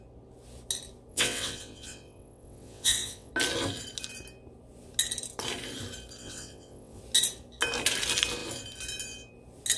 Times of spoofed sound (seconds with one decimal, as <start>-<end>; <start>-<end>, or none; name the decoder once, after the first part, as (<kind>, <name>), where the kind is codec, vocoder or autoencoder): 1.1-3.3 (vocoder, WaveNeXt); 6.2-7.0